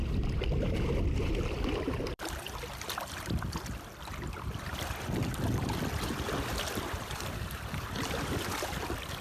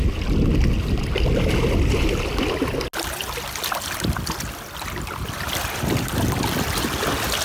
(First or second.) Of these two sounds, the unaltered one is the second